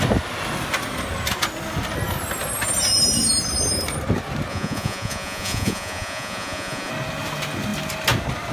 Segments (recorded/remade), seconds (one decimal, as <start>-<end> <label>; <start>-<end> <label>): 0.0-4.5 recorded; 4.5-6.9 remade; 6.9-8.5 recorded